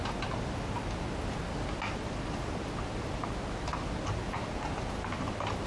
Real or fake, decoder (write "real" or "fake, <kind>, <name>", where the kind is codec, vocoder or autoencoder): real